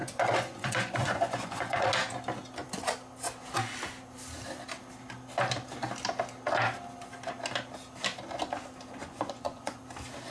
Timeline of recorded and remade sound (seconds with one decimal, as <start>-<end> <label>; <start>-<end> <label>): 0.0-1.9 remade; 1.9-9.0 recorded; 9.0-9.8 remade; 9.8-10.3 recorded